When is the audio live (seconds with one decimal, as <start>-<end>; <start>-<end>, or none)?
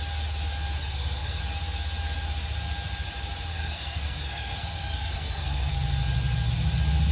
0.0-0.8; 1.4-3.5; 5.7-7.1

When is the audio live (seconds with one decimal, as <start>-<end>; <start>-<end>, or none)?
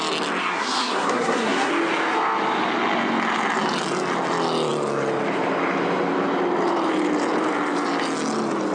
0.0-0.4; 1.7-8.7